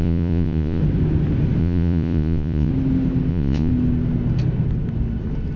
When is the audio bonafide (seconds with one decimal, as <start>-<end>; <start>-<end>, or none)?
0.8-1.6; 2.7-3.3; 3.7-5.6